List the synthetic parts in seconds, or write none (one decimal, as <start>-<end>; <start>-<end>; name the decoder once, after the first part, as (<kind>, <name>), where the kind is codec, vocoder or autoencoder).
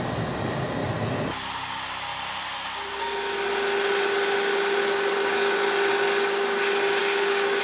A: 7.0-7.6 (codec, DAC)